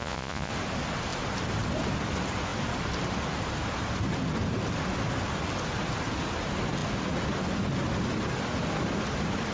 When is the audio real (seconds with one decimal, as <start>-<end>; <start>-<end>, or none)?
0.5-9.5